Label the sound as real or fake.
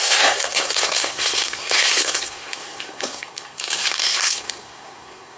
fake